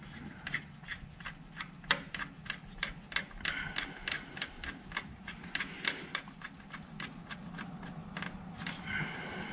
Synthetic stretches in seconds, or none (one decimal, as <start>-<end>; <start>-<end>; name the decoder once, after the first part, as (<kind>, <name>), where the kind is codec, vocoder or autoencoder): none

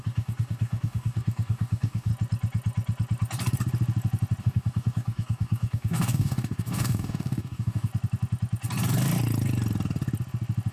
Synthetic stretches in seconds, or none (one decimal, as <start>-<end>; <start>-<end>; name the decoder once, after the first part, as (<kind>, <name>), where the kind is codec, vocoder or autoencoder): 0.0-2.1 (codec, DAC); 4.4-7.9

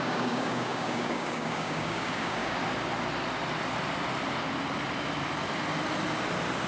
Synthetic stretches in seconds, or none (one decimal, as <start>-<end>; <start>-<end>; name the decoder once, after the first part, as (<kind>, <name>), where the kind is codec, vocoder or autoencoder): 0.0-2.6 (codec, DAC)

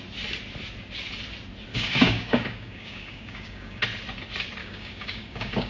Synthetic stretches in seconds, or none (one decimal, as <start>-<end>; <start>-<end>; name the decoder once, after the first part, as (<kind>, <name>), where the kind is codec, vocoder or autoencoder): 1.7-3.8 (codec, DAC); 4.6-5.7

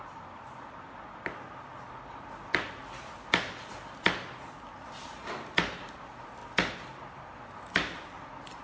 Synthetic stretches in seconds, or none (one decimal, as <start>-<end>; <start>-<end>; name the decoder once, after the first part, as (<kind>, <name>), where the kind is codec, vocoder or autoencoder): none